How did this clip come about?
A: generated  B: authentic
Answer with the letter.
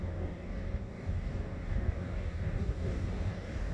A